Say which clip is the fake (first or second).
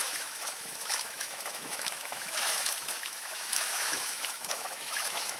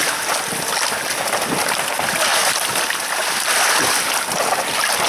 first